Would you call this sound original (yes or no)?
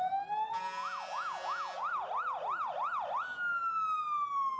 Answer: yes